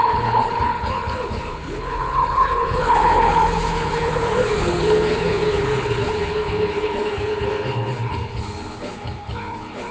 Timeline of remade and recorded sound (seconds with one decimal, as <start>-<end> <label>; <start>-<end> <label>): 0.0-9.9 remade